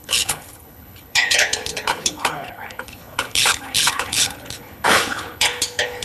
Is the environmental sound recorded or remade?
remade